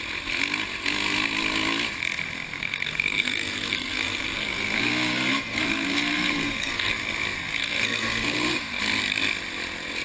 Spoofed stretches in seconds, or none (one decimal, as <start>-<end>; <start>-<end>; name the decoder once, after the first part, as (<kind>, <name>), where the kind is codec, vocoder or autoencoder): 2.6-6.9 (codec, SNAC); 7.6-8.8